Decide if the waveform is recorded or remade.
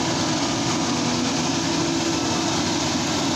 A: recorded